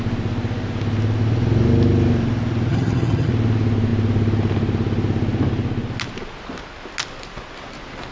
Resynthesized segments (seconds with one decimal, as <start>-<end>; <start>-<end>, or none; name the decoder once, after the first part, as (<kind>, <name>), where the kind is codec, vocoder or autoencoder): 2.7-3.3 (vocoder, HiFi-GAN)